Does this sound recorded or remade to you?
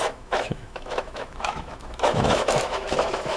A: remade